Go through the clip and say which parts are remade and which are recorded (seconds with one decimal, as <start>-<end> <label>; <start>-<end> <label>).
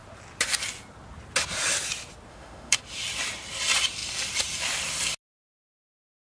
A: 0.0-2.3 recorded; 2.3-2.8 remade; 2.8-6.4 recorded